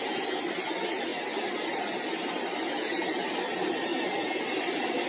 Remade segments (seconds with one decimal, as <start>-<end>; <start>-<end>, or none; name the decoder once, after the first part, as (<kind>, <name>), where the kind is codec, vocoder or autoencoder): 0.0-1.1 (vocoder, BigVGAN v2); 1.8-3.9